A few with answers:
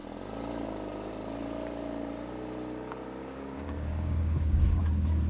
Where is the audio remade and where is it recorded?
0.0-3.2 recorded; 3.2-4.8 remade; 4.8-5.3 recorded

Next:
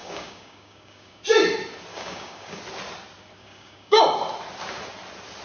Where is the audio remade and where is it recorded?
0.0-1.2 remade; 1.2-1.9 recorded; 1.9-2.6 remade; 2.6-3.4 recorded; 3.4-4.0 remade; 4.0-5.4 recorded

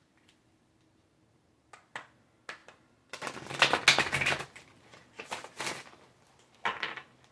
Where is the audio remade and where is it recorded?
0.0-7.3 recorded

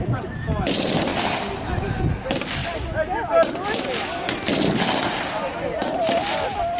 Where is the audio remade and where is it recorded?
0.0-6.8 recorded

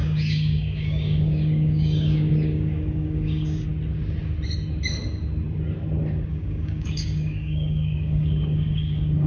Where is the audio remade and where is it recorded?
0.0-3.7 remade; 3.7-6.3 recorded; 6.3-9.3 remade

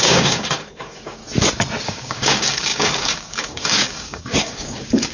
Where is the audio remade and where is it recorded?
0.0-1.2 remade; 1.2-1.8 recorded; 1.8-5.1 remade

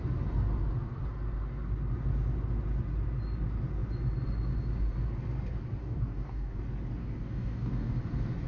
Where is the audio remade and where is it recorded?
0.0-5.8 recorded; 5.8-6.6 remade; 6.6-7.0 recorded; 7.0-8.0 remade; 8.0-8.5 recorded